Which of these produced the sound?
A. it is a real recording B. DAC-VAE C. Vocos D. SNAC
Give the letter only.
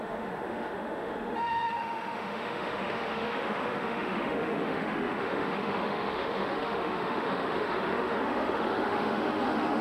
B